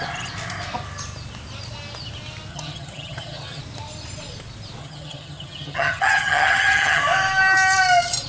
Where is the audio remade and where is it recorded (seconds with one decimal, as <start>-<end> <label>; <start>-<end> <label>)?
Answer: 0.0-2.5 recorded; 2.5-3.6 remade; 3.6-4.8 recorded; 4.8-7.0 remade; 7.0-8.3 recorded